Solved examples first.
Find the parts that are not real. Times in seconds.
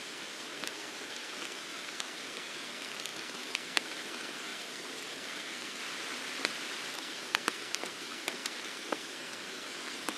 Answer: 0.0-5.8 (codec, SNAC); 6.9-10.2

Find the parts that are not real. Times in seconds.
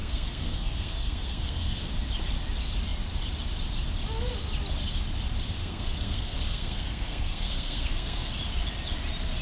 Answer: 0.0-1.9 (codec, SNAC); 5.6-8.3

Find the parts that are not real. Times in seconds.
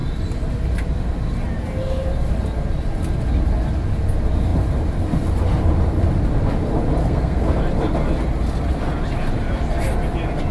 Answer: 7.0-7.6 (codec, SNAC)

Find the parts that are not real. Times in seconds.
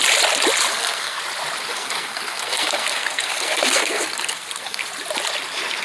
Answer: 0.7-1.2 (codec, SNAC); 1.7-4.8